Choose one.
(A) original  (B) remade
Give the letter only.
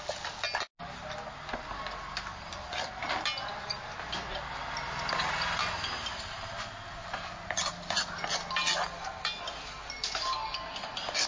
A